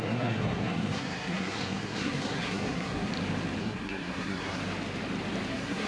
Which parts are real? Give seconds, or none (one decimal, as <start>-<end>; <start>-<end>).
3.1-3.6; 4.6-5.5